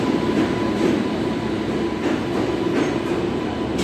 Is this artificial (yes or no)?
no